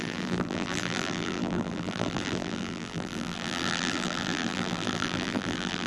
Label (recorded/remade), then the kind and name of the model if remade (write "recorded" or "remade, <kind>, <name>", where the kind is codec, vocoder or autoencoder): remade, vocoder, BigVGAN v2